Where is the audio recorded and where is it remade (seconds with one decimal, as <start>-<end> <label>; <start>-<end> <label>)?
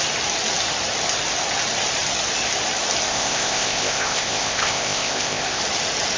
0.0-3.1 recorded; 3.1-5.6 remade; 5.6-6.2 recorded